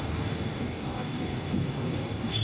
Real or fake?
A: fake